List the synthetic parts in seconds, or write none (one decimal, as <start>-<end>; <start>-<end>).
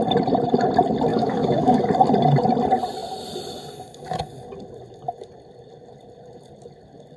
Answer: 1.1-1.8